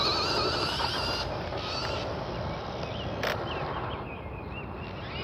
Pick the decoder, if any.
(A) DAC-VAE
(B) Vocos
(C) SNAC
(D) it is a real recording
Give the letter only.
D